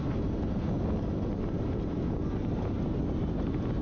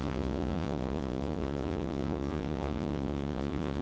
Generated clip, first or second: second